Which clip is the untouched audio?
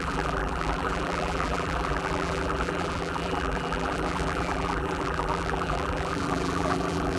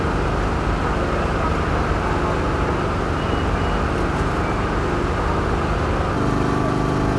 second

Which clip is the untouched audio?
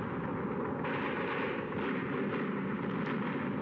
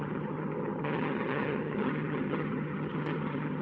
first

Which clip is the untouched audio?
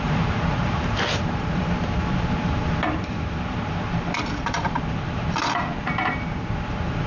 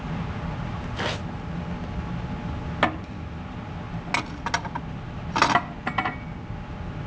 second